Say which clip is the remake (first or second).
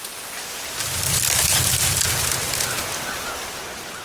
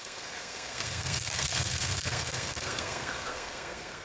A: second